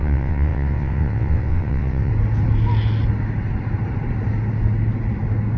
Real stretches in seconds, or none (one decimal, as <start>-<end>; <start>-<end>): 2.1-5.6